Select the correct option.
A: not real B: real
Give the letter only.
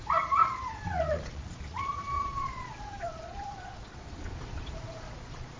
A